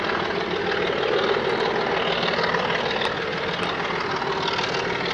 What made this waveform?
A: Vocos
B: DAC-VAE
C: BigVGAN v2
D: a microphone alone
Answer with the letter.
D